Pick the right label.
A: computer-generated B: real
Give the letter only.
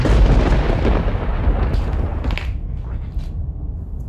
B